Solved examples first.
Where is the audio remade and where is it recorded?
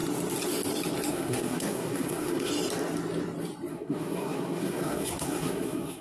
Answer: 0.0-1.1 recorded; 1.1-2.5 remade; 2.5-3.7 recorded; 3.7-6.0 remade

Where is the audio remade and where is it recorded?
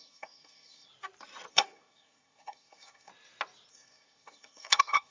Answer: 0.0-0.9 remade; 0.9-1.5 recorded; 1.5-3.1 remade; 3.1-3.7 recorded; 3.7-5.1 remade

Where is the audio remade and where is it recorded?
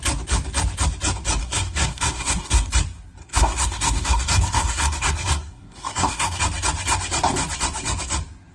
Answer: 0.0-1.4 recorded; 1.4-2.7 remade; 2.7-3.2 recorded; 3.2-6.4 remade; 6.4-8.5 recorded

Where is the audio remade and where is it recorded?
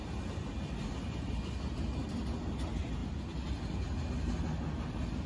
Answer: 0.0-5.3 recorded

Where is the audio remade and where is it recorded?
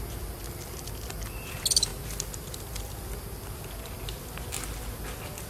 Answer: 0.0-5.5 recorded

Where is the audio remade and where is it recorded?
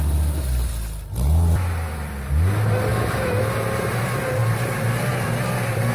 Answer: 0.0-5.9 recorded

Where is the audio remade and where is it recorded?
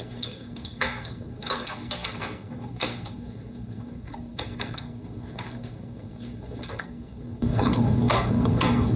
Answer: 0.0-9.0 remade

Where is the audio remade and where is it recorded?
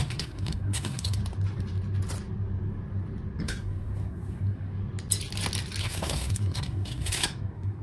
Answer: 0.0-1.2 remade; 1.2-3.4 recorded; 3.4-4.7 remade; 4.7-5.8 recorded; 5.8-7.8 remade